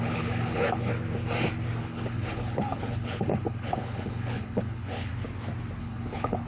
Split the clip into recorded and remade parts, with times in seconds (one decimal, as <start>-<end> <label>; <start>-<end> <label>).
0.0-0.9 remade; 0.9-1.8 recorded; 1.8-5.1 remade; 5.1-5.8 recorded; 5.8-6.5 remade